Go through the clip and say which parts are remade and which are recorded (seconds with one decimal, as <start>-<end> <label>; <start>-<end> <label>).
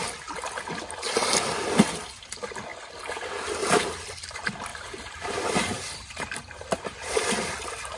0.0-4.7 recorded; 4.7-7.4 remade; 7.4-8.0 recorded